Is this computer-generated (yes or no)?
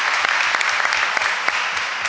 no